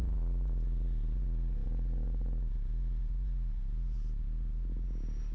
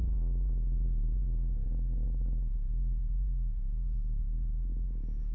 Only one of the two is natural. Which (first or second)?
first